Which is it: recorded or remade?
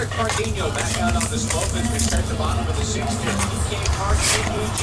remade